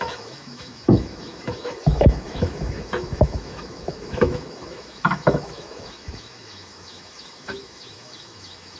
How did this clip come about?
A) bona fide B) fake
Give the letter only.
B